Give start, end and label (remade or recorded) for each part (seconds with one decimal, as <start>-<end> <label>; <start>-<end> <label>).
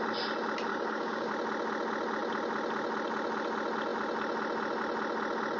0.0-0.7 recorded; 0.7-1.3 remade; 1.3-5.6 recorded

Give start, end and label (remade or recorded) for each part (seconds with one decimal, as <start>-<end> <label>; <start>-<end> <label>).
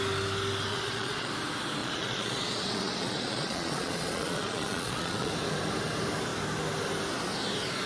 0.0-0.7 recorded; 0.7-1.3 remade; 1.3-1.8 recorded; 1.8-5.3 remade; 5.3-7.9 recorded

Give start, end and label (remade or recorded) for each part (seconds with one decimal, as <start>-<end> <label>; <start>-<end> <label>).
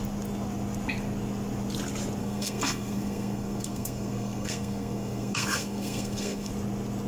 0.0-2.2 recorded; 2.2-6.5 remade; 6.5-7.1 recorded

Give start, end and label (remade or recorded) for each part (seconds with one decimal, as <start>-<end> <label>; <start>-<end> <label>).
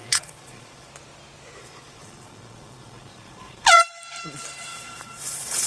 0.0-0.9 remade; 0.9-1.6 recorded; 1.6-3.8 remade; 3.8-4.7 recorded; 4.7-5.7 remade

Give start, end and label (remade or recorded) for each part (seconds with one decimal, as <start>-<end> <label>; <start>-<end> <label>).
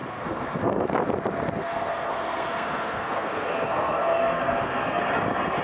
0.0-0.9 remade; 0.9-1.6 recorded; 1.6-5.0 remade; 5.0-5.6 recorded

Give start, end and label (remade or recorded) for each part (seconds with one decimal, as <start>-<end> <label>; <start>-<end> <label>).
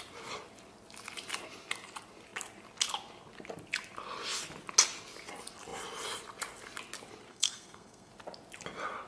0.0-7.3 recorded; 7.3-8.1 remade; 8.1-9.1 recorded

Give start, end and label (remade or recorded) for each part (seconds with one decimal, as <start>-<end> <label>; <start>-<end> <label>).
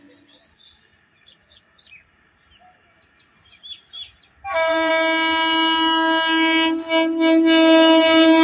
0.0-0.9 recorded; 0.9-4.9 remade; 4.9-8.4 recorded